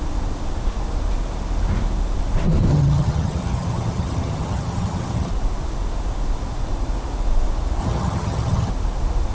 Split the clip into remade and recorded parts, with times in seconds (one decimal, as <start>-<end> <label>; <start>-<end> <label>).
0.0-2.7 recorded; 2.7-5.3 remade; 5.3-7.8 recorded; 7.8-8.7 remade; 8.7-9.3 recorded